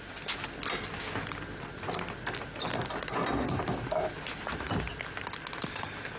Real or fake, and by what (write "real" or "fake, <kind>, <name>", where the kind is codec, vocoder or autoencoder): real